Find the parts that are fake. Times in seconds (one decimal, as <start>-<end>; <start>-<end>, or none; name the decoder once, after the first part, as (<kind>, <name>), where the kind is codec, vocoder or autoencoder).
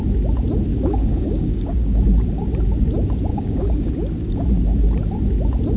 0.7-2.0 (codec, DAC); 3.3-3.9